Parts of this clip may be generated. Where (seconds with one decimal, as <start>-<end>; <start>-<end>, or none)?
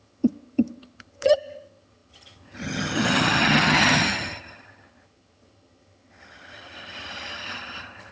0.0-8.1